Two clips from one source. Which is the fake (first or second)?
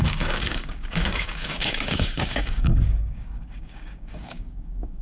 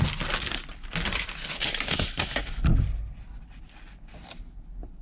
first